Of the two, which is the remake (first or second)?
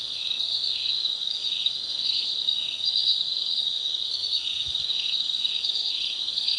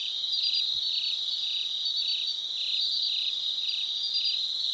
first